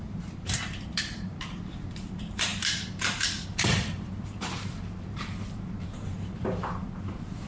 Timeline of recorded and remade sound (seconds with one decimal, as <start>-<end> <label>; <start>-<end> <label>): 0.0-7.5 remade